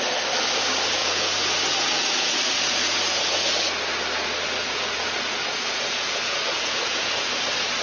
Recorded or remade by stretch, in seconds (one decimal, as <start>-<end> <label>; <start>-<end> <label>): 0.0-1.0 recorded; 1.0-3.5 remade; 3.5-4.6 recorded; 4.6-7.2 remade; 7.2-7.8 recorded